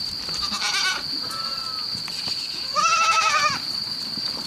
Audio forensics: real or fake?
real